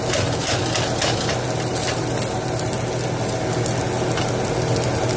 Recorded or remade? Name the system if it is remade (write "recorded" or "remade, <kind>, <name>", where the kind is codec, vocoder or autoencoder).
recorded